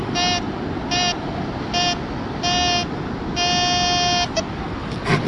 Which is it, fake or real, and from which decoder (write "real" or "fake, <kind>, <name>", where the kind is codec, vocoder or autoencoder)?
real